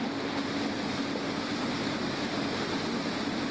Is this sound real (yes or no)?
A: yes